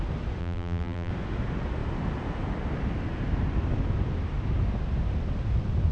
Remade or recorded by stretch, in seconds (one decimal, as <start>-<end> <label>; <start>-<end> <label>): 0.0-0.4 recorded; 0.4-1.1 remade; 1.1-5.9 recorded